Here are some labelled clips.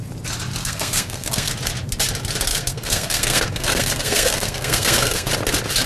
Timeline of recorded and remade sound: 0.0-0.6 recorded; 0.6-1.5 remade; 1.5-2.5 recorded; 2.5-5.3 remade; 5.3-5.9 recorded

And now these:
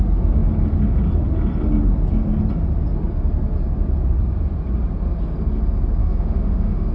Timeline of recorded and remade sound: 0.0-6.0 recorded; 6.0-6.9 remade

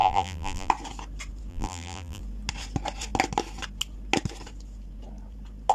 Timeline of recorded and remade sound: 0.0-0.7 remade; 0.7-1.5 recorded; 1.5-2.2 remade; 2.2-5.7 recorded

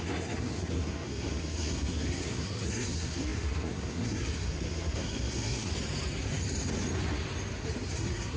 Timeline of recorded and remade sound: 0.0-5.7 remade; 5.7-7.9 recorded; 7.9-8.4 remade

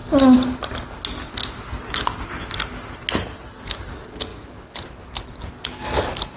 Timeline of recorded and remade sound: 0.0-6.4 recorded